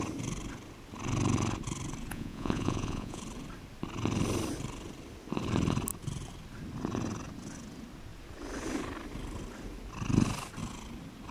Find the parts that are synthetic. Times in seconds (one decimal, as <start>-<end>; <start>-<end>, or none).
2.1-3.2